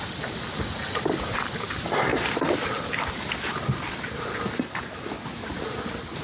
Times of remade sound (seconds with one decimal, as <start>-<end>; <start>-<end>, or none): none